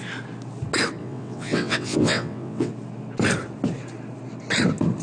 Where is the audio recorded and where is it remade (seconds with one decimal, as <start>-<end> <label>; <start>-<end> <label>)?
0.0-1.0 recorded; 1.0-2.7 remade; 2.7-5.0 recorded